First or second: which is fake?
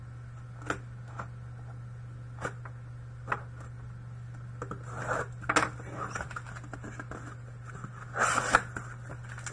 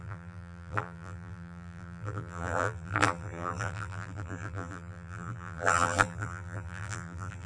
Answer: second